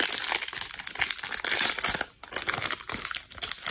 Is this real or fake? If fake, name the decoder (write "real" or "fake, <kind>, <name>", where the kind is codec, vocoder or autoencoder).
real